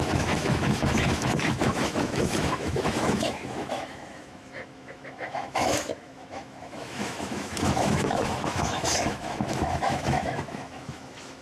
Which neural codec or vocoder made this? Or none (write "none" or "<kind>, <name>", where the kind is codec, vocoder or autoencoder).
autoencoder, DAC-VAE